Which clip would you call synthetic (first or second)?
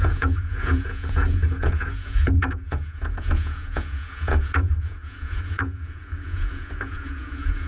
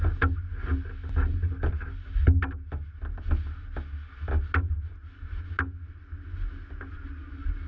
first